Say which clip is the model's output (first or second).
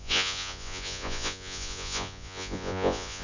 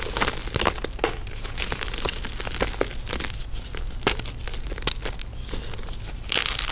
first